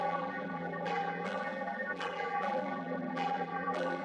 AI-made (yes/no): yes